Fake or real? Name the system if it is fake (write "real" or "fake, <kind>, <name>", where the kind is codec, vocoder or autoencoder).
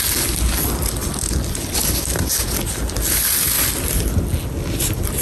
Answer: real